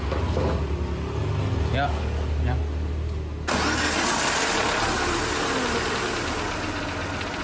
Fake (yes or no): no